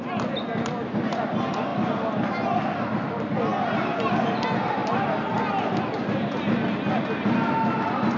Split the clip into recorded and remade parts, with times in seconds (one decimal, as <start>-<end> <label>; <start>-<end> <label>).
0.0-8.2 recorded